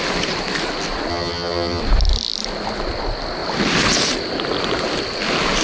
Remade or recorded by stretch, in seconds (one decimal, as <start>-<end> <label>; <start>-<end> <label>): 0.0-1.1 recorded; 1.1-1.8 remade; 1.8-5.6 recorded